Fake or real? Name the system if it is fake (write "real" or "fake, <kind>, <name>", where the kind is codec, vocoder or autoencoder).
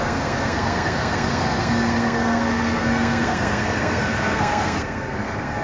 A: fake, codec, SNAC